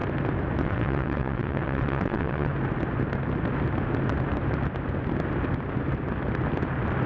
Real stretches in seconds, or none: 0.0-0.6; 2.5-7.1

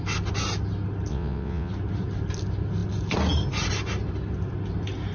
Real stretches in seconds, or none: 0.0-1.1; 1.7-5.1

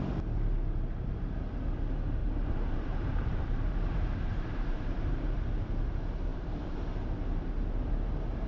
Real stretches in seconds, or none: 0.0-2.2; 5.4-6.3; 6.8-8.5

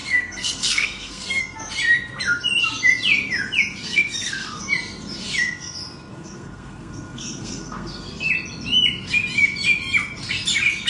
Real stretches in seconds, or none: 1.4-3.8; 4.6-6.1; 8.3-10.9

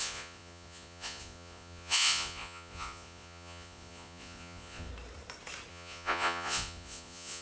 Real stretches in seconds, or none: 4.9-5.7